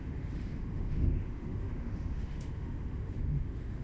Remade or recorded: remade